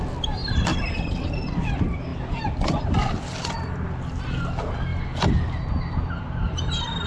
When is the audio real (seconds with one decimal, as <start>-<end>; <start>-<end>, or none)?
0.0-2.1; 4.0-7.1